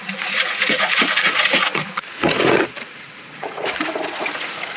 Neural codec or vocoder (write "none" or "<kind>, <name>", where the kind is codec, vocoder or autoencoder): vocoder, Vocos